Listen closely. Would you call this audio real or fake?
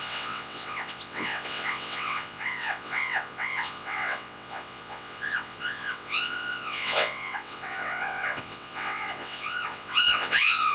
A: fake